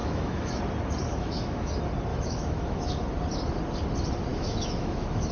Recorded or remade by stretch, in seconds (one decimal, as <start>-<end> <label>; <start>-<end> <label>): 0.0-0.6 remade; 0.6-1.1 recorded; 1.1-1.7 remade; 1.7-2.1 recorded; 2.1-2.9 remade; 2.9-4.3 recorded; 4.3-5.3 remade